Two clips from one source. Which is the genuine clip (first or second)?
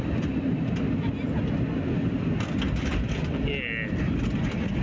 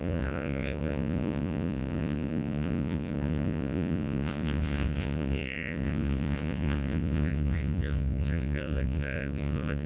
first